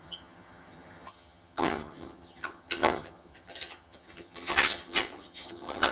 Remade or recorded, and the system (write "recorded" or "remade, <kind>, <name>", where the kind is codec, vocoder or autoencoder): remade, vocoder, HiFi-GAN